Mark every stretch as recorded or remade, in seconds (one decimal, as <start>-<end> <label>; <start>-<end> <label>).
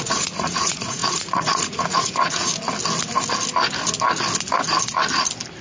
0.0-2.5 remade; 2.5-5.6 recorded